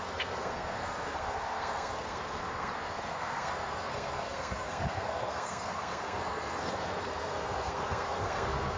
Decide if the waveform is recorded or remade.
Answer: remade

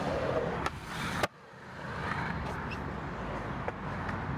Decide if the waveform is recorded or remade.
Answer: recorded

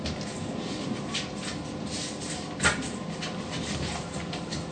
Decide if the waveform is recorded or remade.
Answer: recorded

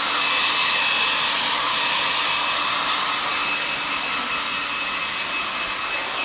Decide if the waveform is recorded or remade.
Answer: recorded